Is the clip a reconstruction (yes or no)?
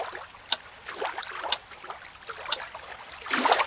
no